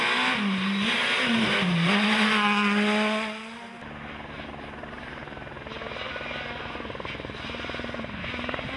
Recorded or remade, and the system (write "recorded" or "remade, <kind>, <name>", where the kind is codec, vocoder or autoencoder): recorded